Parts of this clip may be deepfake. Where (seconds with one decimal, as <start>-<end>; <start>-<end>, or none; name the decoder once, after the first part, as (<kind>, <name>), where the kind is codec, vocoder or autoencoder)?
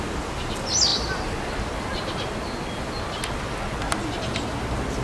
none